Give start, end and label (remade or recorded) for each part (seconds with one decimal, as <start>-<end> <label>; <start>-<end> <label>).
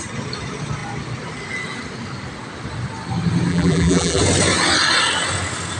0.0-3.5 recorded; 3.5-4.2 remade; 4.2-5.8 recorded